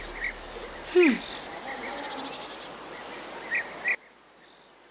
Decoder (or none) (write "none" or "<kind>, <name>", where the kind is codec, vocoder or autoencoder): none